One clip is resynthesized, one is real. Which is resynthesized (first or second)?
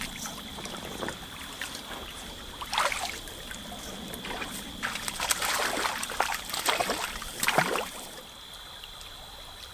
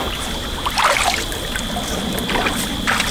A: first